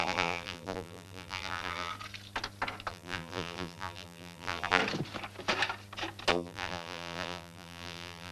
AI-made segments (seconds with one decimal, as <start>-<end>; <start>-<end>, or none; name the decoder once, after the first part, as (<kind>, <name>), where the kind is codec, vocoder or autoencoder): 0.0-1.9 (vocoder, BigVGAN v2); 2.9-4.8; 6.3-8.3